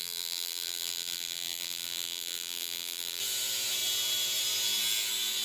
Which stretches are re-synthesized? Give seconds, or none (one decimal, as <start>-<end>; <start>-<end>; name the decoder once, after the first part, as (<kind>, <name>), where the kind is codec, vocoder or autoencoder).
0.0-3.2 (vocoder, BigVGAN v2)